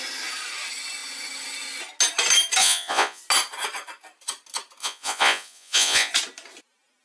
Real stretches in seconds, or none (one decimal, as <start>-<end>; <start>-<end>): 0.0-2.6; 3.2-4.8; 6.1-7.0